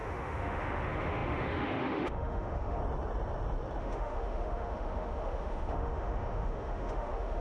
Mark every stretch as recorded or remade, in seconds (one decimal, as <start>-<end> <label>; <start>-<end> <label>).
0.0-2.8 remade; 2.8-3.8 recorded; 3.8-7.4 remade